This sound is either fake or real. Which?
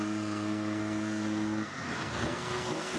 fake